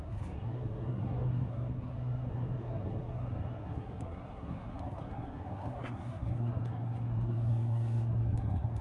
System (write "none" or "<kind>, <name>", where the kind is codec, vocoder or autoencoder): codec, SNAC